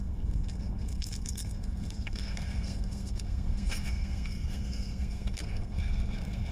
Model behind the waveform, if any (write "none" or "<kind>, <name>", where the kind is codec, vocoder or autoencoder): codec, SNAC